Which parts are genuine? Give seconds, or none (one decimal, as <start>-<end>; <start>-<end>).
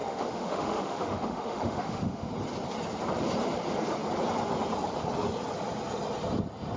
2.3-6.8